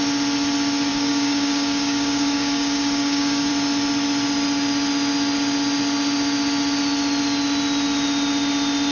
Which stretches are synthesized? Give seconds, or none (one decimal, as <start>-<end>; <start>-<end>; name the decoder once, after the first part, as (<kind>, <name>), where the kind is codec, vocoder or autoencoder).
0.9-3.5 (codec, DAC)